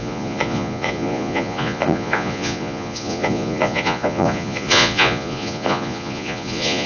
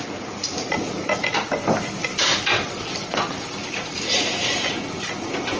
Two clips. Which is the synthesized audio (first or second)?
first